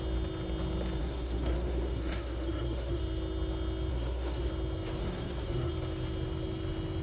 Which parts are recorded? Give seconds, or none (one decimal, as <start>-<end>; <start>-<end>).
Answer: 0.0-1.0; 3.0-3.9; 4.5-5.0; 5.7-7.0